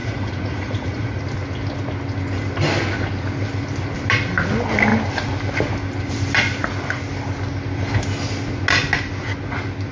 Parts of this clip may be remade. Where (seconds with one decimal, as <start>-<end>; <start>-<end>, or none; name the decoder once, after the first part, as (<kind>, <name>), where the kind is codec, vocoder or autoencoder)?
0.0-1.2 (vocoder, Vocos)